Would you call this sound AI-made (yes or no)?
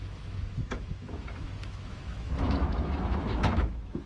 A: yes